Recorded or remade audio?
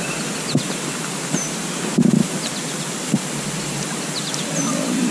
recorded